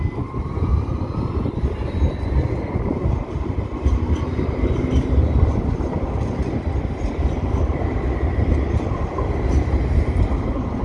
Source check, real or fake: real